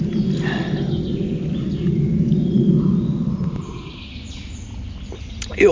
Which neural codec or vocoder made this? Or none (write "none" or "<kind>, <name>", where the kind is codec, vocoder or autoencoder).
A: none